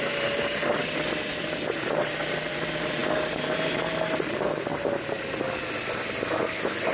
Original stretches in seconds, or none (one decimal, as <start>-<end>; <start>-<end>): 0.6-1.4; 4.7-6.9